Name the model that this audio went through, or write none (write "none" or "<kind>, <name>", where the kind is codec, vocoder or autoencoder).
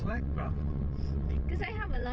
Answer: vocoder, WaveNeXt